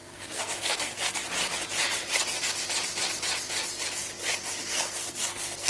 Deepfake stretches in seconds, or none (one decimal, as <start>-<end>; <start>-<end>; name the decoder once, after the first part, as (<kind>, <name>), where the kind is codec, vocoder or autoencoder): 0.0-1.2 (codec, SNAC); 4.6-5.7